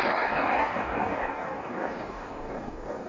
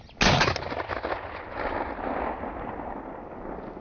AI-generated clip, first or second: first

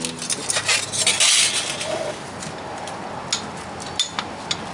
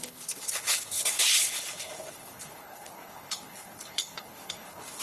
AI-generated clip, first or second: second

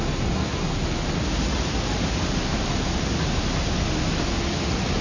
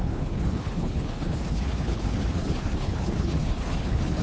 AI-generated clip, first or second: second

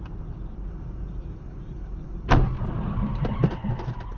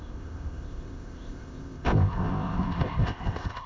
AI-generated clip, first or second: second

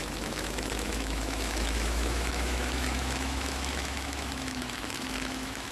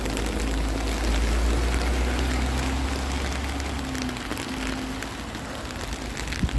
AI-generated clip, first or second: first